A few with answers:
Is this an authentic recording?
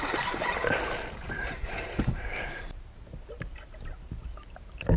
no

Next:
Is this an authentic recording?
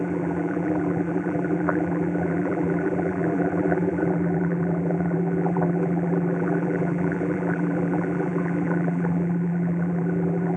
no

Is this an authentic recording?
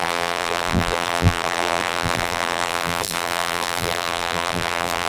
no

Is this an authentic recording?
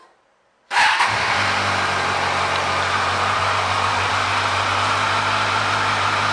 yes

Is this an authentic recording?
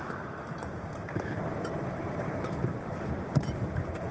no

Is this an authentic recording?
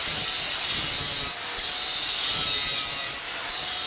no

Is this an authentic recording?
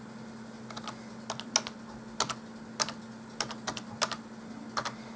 yes